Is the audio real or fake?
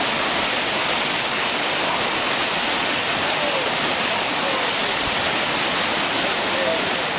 real